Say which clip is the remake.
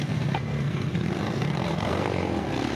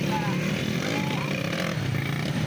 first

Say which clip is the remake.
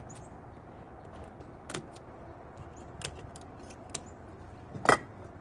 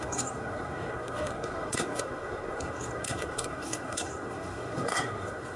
second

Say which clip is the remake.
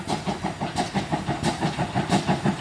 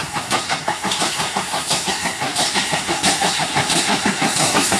second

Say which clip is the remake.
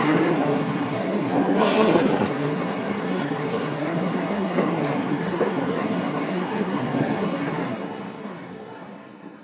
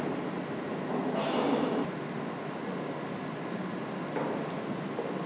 first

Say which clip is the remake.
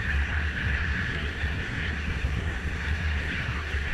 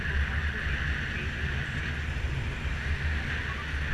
first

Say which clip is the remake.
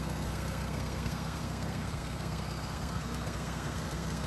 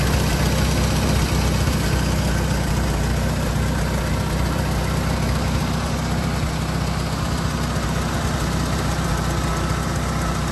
first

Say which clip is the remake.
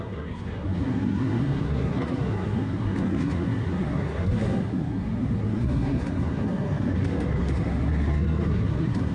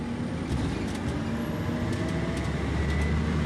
first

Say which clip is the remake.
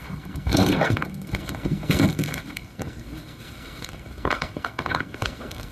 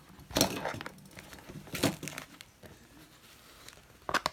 first